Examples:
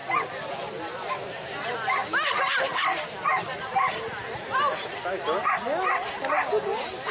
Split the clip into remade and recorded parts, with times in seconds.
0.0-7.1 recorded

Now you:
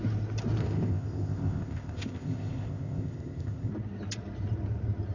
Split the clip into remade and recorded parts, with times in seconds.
0.0-0.6 recorded; 0.6-3.7 remade; 3.7-5.1 recorded